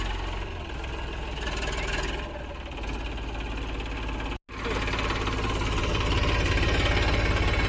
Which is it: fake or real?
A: real